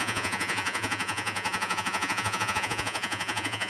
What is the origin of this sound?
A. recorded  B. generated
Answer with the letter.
B